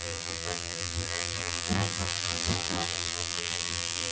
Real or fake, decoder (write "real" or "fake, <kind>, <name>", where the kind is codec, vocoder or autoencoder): fake, vocoder, BigVGAN v2